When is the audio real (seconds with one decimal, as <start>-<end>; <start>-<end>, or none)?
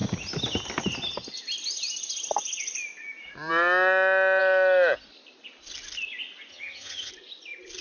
0.0-6.5; 7.1-7.8